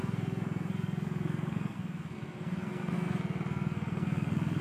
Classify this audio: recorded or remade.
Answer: remade